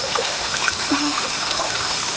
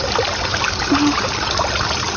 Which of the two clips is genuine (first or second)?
second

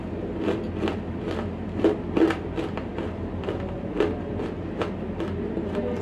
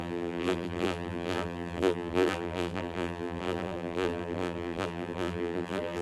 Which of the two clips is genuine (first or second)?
first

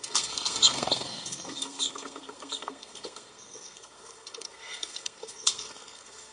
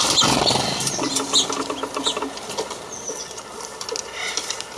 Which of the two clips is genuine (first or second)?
second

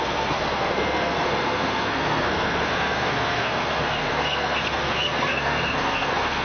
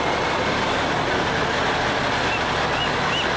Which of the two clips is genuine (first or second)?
second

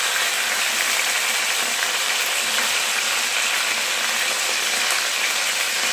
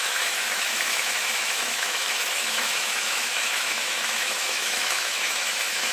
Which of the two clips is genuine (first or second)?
first